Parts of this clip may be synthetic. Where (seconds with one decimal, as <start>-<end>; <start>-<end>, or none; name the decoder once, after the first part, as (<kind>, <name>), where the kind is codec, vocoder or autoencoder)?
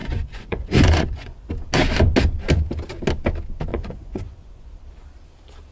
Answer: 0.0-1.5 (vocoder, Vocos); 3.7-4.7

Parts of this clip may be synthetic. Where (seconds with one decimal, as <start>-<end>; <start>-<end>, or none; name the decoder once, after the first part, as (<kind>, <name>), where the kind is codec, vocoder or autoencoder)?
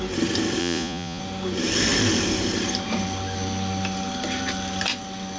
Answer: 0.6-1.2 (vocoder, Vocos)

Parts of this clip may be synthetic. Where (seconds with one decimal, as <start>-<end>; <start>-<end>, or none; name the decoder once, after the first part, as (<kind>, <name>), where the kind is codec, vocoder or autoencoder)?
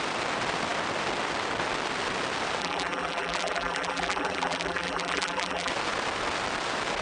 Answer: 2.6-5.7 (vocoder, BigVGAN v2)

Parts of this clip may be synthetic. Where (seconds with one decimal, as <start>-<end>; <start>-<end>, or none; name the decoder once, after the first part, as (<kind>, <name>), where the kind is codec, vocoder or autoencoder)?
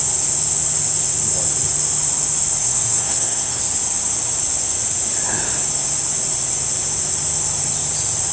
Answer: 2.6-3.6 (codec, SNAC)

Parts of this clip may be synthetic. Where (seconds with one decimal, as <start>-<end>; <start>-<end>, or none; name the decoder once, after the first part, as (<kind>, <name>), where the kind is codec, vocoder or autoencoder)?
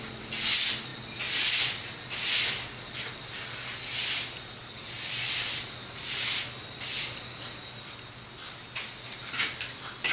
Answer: none